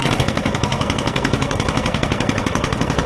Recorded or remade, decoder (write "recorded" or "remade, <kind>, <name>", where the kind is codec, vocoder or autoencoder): remade, codec, SNAC